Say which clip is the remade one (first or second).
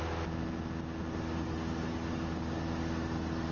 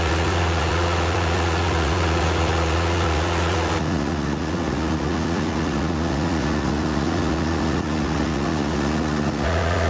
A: second